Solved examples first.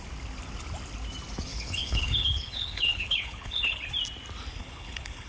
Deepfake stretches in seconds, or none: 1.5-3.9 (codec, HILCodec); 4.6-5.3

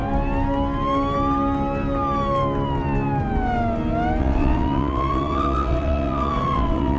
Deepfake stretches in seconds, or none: 4.2-7.0 (vocoder, WaveNeXt)

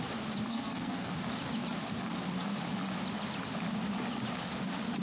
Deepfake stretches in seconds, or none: 0.5-1.1 (codec, SNAC)